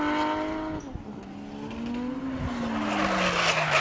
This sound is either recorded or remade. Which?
recorded